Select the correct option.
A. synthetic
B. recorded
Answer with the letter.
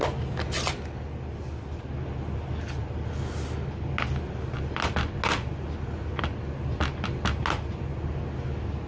B